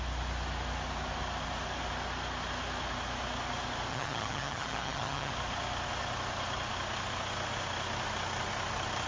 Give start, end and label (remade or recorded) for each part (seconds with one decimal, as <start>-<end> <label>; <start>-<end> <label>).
0.0-3.9 recorded; 3.9-5.3 remade; 5.3-9.1 recorded